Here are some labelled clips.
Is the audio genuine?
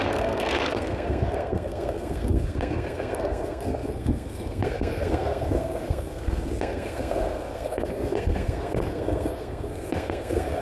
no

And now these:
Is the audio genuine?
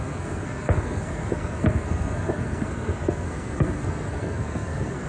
no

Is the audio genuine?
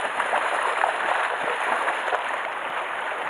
yes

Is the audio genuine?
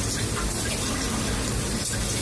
yes